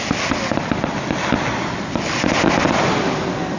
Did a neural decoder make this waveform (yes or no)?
no